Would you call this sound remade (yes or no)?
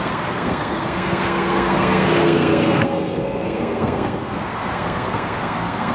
yes